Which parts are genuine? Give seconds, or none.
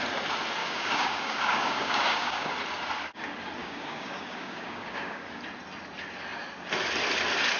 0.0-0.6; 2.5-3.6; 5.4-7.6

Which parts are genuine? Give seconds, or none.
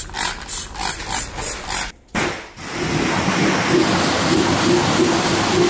0.0-5.7